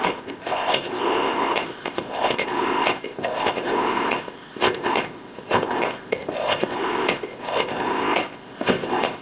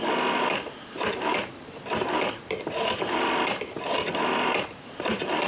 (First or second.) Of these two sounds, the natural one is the second